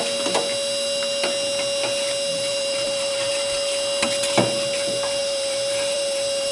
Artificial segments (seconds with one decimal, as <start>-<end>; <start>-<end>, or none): 2.3-3.3; 5.2-6.5